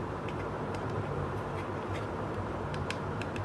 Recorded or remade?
remade